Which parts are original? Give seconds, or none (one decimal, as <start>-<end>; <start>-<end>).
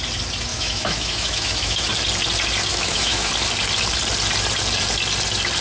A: 0.0-0.5; 1.9-2.7; 3.3-5.6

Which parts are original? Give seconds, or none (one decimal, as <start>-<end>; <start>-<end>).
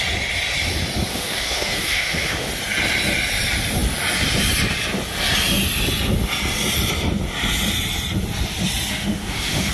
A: 0.0-1.1; 2.5-8.9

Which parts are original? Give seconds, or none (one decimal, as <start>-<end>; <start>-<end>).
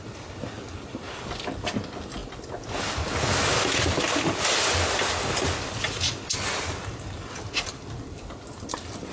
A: 0.0-9.1